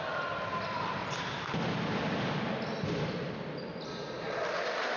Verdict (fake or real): real